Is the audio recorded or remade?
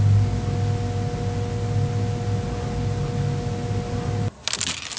recorded